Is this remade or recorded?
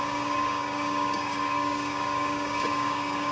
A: remade